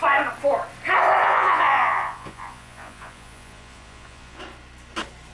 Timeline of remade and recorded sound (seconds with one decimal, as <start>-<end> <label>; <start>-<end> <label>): 0.0-1.2 recorded; 1.2-4.4 remade; 4.4-5.3 recorded